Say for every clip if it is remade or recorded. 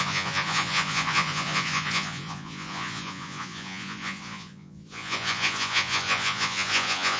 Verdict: remade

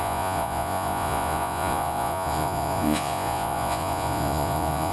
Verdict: remade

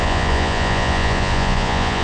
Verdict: remade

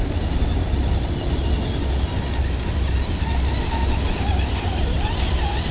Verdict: recorded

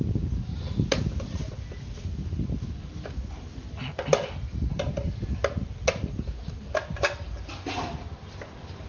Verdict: recorded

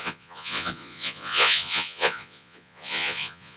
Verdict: remade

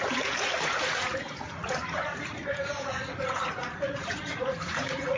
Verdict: remade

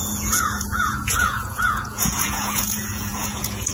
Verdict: remade